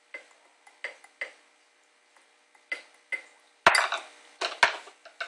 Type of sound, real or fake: real